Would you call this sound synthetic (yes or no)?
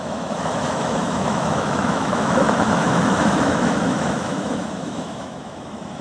yes